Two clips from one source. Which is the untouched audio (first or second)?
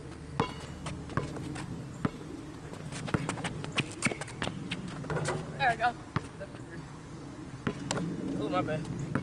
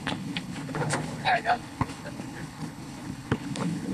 first